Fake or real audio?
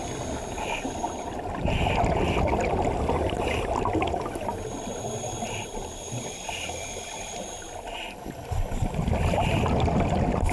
real